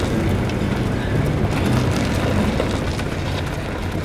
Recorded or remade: recorded